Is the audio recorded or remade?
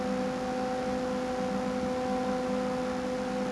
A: recorded